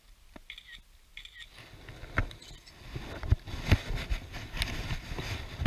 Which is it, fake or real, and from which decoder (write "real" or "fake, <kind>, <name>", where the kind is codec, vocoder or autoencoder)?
real